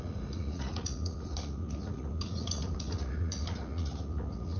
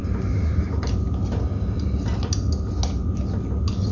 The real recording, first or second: second